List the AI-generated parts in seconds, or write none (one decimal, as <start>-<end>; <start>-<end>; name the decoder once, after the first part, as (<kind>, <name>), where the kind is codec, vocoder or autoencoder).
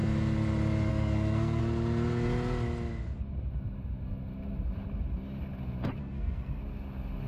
0.9-1.6 (codec, SNAC); 6.0-6.6